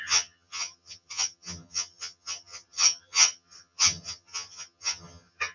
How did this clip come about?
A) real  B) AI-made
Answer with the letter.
B